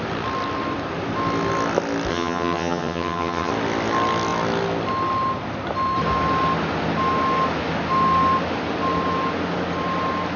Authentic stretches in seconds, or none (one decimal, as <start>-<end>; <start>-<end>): 0.0-2.1; 3.5-10.4